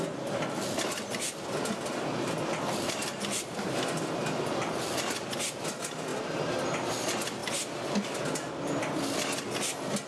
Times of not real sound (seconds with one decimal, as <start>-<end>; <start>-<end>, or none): none

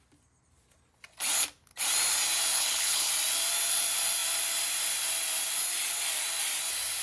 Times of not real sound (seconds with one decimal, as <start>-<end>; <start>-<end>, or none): 2.5-3.1

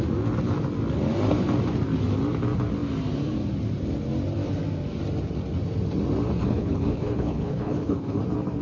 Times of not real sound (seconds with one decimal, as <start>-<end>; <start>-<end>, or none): 6.4-8.2

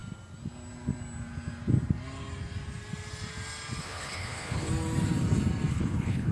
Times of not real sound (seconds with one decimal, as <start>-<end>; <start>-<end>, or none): 3.8-4.7; 5.7-6.3